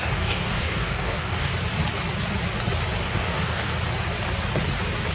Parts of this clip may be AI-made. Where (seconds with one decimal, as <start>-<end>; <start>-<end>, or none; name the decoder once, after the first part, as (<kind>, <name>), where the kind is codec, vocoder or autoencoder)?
0.0-1.5 (codec, DAC); 3.0-3.7